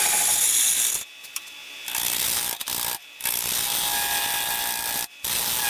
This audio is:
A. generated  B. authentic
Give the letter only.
B